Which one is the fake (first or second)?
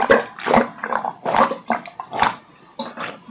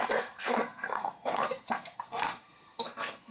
second